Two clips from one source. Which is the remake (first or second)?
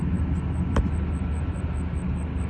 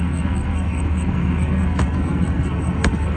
second